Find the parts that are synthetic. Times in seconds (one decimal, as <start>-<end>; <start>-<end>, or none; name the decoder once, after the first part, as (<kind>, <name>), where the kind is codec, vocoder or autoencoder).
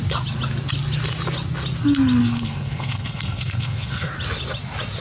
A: 2.2-4.1 (codec, SNAC)